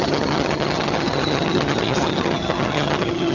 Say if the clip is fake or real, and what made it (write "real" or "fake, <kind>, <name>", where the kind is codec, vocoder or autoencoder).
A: fake, vocoder, HiFi-GAN